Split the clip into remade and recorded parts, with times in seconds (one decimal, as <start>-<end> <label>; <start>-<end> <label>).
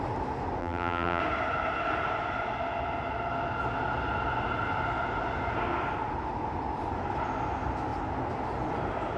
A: 0.0-0.6 recorded; 0.6-1.2 remade; 1.2-9.2 recorded